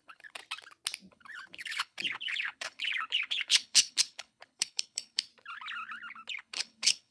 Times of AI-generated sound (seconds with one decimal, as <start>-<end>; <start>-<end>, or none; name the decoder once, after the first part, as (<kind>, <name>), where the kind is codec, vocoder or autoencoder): 0.0-0.4 (codec, HILCodec); 1.1-5.3; 6.3-7.1